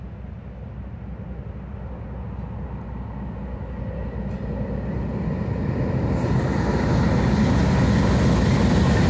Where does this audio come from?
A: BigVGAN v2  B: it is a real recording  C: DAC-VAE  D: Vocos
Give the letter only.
B